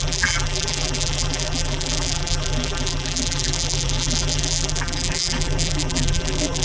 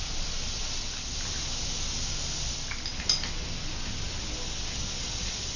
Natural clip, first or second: second